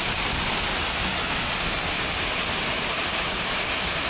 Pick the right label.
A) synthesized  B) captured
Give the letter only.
B